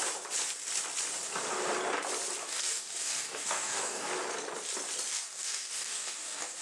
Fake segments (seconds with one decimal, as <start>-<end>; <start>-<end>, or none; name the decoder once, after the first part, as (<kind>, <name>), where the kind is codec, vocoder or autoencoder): 2.4-4.1 (codec, DAC); 5.1-6.6